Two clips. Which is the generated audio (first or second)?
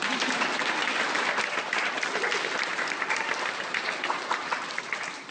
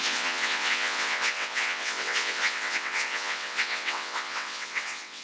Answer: second